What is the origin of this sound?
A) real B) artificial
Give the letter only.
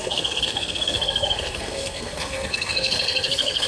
B